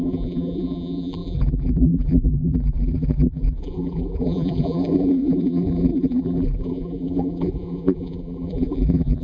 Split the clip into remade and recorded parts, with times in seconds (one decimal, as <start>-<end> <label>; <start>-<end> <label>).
0.0-9.2 remade